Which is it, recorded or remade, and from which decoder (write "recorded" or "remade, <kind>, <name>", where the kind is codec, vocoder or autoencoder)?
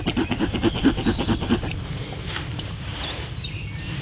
recorded